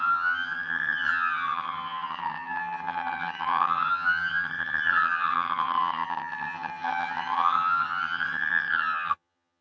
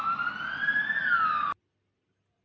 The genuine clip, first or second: second